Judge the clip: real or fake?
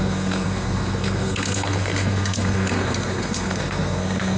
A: fake